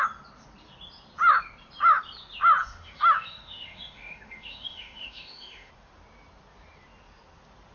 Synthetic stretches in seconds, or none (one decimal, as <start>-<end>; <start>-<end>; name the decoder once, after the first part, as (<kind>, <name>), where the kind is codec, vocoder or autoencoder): 2.6-5.7 (autoencoder, DAC-VAE)